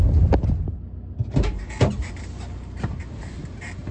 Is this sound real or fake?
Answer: real